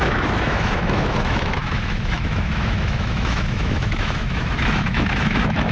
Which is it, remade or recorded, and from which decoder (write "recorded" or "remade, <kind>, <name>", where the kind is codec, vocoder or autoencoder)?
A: remade, autoencoder, DAC-VAE